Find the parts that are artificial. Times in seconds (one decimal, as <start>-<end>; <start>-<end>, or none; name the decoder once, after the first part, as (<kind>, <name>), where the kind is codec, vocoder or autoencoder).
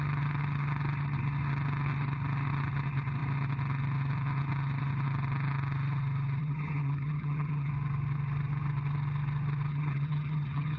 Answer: 6.4-7.7 (vocoder, HiFi-GAN); 9.7-10.8